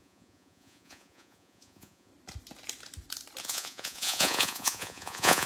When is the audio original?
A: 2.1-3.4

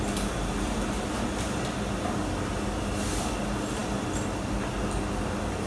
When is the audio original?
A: 0.0-5.7

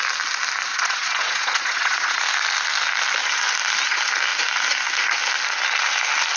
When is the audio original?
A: 0.0-0.7; 2.2-6.4

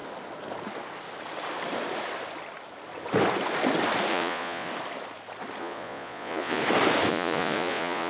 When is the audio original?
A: 0.0-4.1; 4.7-5.6; 6.6-7.1

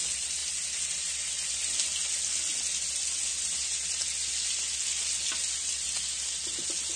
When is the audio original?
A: 0.0-7.0

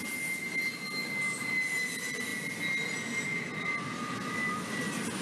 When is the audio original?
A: 0.0-5.2

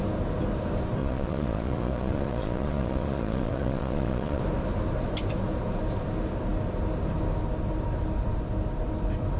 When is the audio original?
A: 0.0-1.0; 4.4-9.4